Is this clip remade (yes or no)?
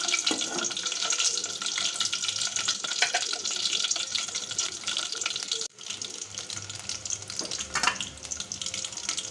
no